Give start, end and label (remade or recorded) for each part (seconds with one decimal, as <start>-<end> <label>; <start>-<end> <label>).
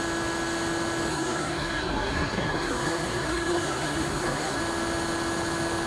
0.0-1.1 recorded; 1.1-4.6 remade; 4.6-5.9 recorded